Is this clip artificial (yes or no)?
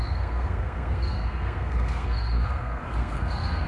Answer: yes